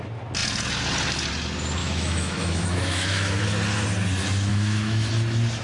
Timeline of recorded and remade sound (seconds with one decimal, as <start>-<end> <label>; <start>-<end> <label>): 0.0-1.8 recorded; 1.8-3.4 remade; 3.4-4.5 recorded; 4.5-5.1 remade; 5.1-5.6 recorded